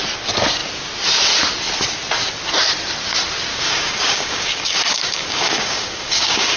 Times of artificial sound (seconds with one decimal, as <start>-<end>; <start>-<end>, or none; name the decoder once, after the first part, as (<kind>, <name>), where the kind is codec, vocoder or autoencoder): 3.5-6.6 (codec, DAC)